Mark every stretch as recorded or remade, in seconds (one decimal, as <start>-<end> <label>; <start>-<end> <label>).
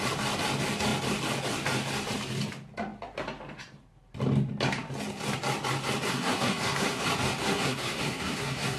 0.0-6.1 recorded; 6.1-7.0 remade; 7.0-7.4 recorded; 7.4-8.8 remade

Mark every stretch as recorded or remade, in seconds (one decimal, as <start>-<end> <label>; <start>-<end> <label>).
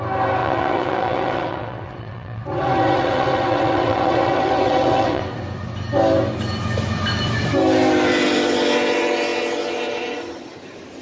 0.0-0.4 recorded; 0.4-5.2 remade; 5.2-11.0 recorded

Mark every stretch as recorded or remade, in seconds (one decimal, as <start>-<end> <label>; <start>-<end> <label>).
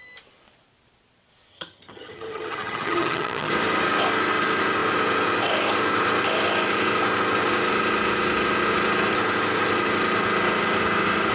0.0-1.5 recorded; 1.5-3.5 remade; 3.5-11.3 recorded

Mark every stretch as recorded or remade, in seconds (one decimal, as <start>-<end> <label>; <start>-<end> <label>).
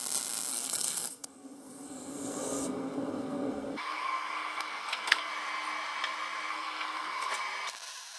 0.0-0.5 recorded; 0.5-5.3 remade; 5.3-6.5 recorded; 6.5-7.3 remade; 7.3-8.2 recorded